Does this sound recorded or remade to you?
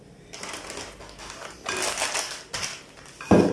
recorded